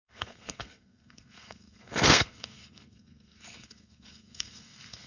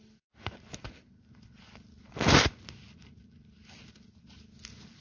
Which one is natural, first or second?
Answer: second